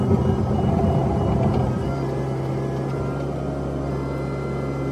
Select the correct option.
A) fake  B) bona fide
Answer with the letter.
B